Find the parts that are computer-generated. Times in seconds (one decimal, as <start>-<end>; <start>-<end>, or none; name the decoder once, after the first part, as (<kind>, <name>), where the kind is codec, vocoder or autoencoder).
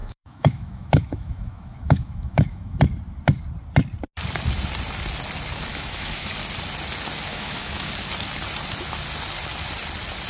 0.0-2.8 (autoencoder, DAC-VAE); 5.7-6.3; 7.3-7.9